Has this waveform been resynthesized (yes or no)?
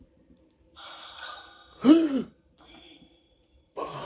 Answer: yes